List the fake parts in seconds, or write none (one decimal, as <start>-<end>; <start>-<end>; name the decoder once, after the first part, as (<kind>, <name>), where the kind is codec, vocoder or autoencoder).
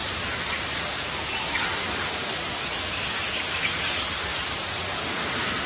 0.0-0.9 (vocoder, BigVGAN v2)